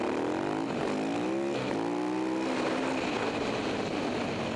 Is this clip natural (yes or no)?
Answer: yes